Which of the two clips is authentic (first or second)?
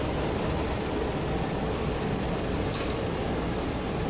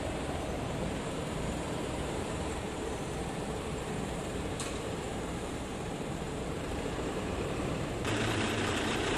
first